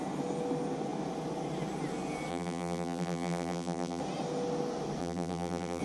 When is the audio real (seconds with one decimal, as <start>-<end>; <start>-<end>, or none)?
0.0-2.3; 4.0-5.0